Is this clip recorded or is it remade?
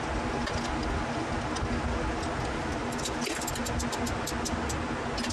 recorded